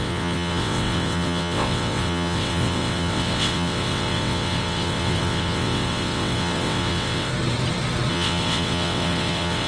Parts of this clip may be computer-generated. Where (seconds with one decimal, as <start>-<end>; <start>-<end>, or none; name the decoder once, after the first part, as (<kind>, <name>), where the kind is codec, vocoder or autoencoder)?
0.0-7.3 (vocoder, WaveNeXt); 8.1-9.7

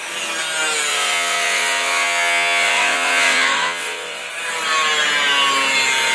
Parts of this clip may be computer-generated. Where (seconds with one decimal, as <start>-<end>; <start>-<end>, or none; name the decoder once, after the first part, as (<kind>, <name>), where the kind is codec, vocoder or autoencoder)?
0.9-4.3 (vocoder, WaveNeXt)

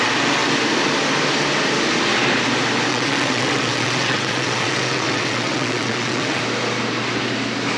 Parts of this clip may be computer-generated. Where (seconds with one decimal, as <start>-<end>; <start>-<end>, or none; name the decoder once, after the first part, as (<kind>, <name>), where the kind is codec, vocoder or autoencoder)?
2.9-6.4 (vocoder, WaveNeXt)

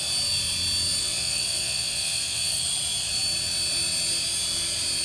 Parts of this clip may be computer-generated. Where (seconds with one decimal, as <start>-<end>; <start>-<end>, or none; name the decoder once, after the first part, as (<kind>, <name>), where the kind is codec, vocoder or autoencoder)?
1.0-2.6 (vocoder, WaveNeXt)

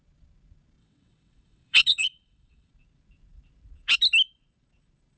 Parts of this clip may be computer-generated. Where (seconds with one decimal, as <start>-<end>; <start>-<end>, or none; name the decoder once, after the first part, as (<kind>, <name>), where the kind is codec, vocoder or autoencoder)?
0.8-2.7 (vocoder, WaveNeXt)

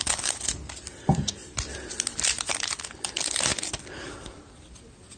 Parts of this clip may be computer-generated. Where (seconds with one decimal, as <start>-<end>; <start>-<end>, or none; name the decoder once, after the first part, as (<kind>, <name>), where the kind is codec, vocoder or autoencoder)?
none

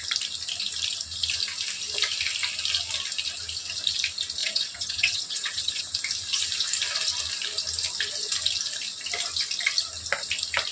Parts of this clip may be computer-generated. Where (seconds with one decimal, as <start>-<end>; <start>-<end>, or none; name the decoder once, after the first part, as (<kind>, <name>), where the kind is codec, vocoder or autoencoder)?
4.4-5.8 (vocoder, WaveNeXt)

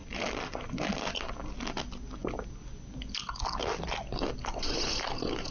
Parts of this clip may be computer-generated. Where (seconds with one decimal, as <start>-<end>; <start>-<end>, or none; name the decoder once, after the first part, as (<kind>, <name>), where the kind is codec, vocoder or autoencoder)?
none